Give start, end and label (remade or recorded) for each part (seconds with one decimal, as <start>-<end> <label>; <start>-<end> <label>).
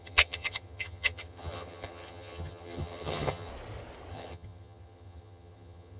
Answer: 0.0-3.5 remade; 3.5-4.1 recorded; 4.1-6.0 remade